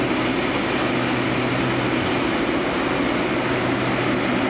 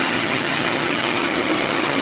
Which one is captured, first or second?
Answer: first